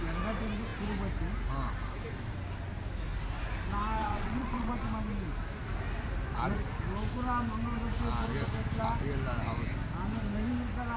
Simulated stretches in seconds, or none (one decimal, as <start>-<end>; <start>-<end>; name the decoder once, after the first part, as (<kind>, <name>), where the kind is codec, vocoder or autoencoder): 4.0-4.7 (vocoder, WaveNeXt)